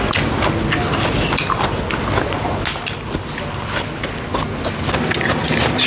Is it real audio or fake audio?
real